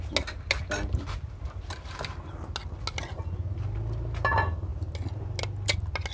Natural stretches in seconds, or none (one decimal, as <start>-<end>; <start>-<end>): 0.0-6.1